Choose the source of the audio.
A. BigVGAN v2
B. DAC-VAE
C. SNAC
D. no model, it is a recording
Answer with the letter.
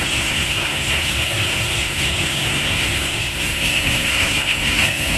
C